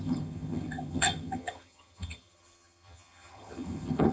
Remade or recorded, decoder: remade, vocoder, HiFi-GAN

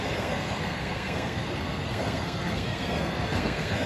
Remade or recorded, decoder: remade, codec, SNAC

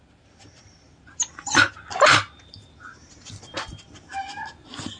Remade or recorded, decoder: recorded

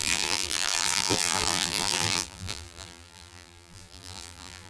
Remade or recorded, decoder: remade, vocoder, BigVGAN v2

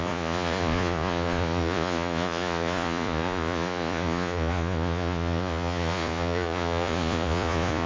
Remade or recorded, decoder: remade, vocoder, Vocos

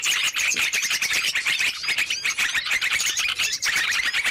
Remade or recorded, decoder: remade, vocoder, BigVGAN v2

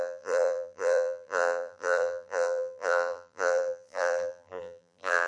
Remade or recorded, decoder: remade, vocoder, BigVGAN v2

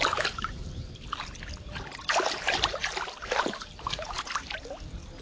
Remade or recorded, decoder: recorded